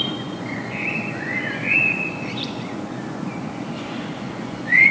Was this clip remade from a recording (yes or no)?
yes